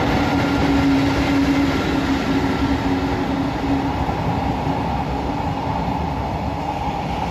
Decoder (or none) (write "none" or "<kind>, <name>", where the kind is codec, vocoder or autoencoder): none